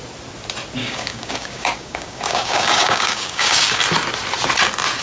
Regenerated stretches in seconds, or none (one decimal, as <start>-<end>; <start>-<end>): 0.8-3.8